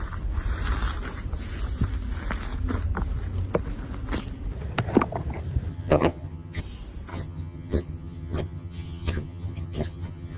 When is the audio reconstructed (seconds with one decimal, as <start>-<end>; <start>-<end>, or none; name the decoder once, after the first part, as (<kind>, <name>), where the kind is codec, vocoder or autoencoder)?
5.7-6.6 (vocoder, HiFi-GAN); 7.1-10.4